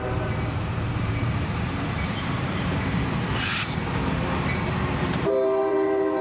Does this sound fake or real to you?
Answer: fake